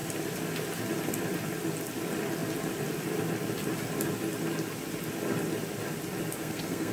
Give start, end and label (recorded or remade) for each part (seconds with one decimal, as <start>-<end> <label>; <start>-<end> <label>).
0.0-6.4 recorded; 6.4-6.9 remade